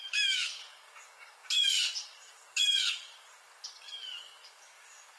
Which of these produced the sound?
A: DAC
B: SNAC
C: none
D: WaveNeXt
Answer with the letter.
A